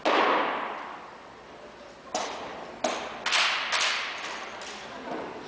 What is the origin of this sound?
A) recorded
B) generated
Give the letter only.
A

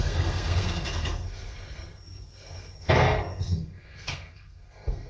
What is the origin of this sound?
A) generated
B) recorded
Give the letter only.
A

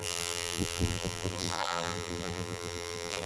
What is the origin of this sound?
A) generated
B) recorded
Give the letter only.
A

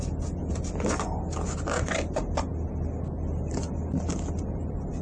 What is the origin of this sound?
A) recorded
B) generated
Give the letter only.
A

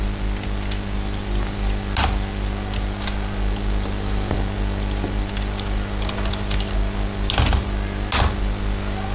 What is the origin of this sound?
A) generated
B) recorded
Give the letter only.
B